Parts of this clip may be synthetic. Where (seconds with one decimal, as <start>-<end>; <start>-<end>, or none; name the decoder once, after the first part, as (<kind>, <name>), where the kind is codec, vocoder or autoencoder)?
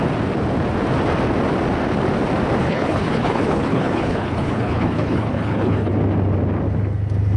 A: 2.6-5.9 (codec, HILCodec)